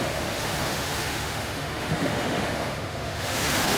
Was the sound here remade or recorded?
remade